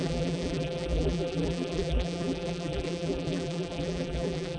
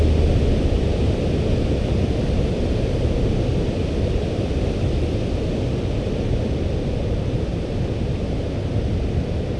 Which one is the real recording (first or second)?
second